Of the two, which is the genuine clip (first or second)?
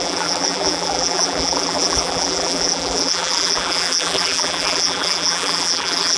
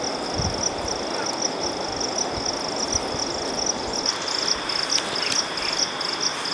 second